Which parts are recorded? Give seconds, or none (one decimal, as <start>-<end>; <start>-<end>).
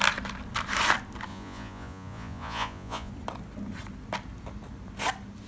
0.0-1.3; 3.1-5.5